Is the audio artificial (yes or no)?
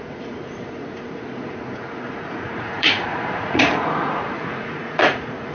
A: yes